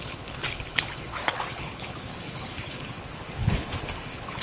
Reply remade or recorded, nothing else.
remade